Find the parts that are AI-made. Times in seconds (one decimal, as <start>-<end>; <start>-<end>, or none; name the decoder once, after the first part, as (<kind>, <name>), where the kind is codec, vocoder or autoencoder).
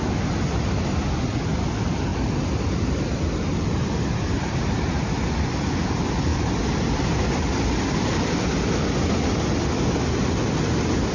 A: 2.1-3.7 (vocoder, BigVGAN v2); 6.3-8.9